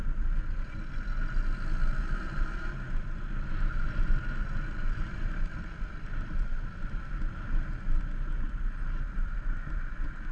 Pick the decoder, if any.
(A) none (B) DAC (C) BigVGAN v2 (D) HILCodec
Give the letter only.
A